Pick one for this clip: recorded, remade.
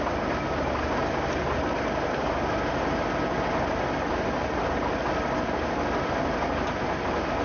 recorded